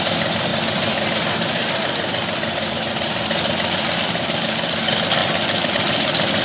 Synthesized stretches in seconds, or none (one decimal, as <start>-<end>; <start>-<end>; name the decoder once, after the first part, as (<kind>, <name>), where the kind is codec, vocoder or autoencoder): 0.5-4.0 (vocoder, BigVGAN v2)